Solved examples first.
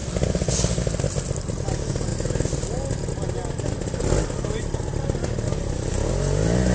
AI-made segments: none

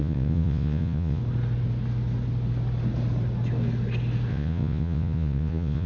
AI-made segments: 0.0-1.2 (vocoder, Vocos); 4.3-5.9

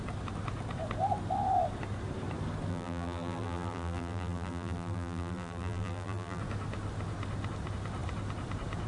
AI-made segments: 2.7-6.4 (vocoder, BigVGAN v2)

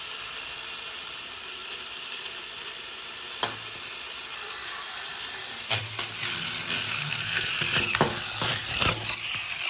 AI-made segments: 7.0-7.5 (codec, SNAC)

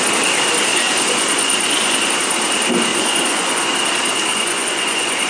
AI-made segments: 0.7-2.1 (vocoder, Vocos); 2.9-3.7; 4.3-5.3

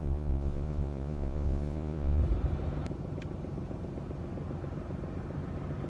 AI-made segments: 0.0-2.2 (vocoder, Vocos)